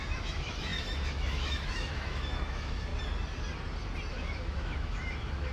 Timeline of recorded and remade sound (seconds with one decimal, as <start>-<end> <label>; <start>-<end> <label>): 0.0-2.9 remade; 2.9-4.1 recorded; 4.1-5.5 remade